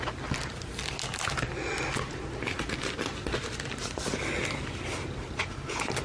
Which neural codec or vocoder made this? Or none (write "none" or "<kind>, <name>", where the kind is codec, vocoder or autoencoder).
none